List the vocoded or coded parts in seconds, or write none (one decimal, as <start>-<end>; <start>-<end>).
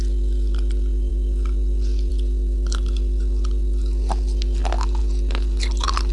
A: none